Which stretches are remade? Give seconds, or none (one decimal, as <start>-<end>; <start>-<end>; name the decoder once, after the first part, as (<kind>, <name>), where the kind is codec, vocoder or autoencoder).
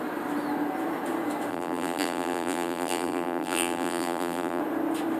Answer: 1.5-4.6 (vocoder, BigVGAN v2)